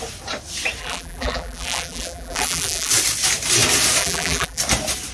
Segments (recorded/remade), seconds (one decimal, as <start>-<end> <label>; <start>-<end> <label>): 0.0-0.8 recorded; 0.8-2.9 remade; 2.9-4.0 recorded; 4.0-4.6 remade; 4.6-5.1 recorded